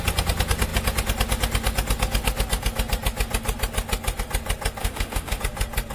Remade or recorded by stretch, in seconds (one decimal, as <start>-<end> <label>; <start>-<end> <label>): 0.0-4.8 recorded; 4.8-5.4 remade; 5.4-5.9 recorded